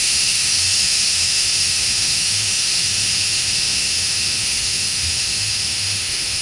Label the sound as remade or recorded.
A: remade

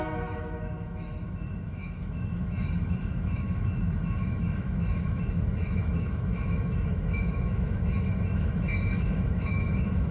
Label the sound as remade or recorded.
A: remade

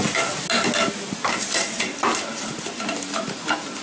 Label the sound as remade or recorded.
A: recorded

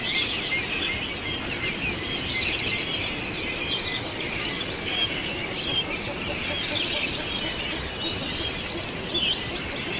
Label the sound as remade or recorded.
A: recorded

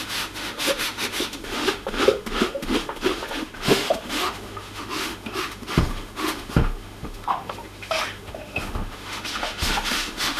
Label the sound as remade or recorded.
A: remade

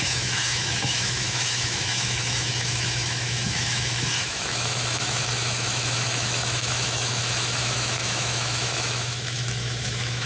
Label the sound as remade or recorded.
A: remade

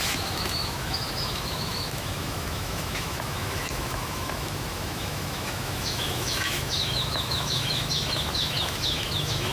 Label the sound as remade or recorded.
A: remade